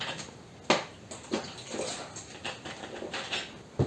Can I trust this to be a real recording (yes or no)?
yes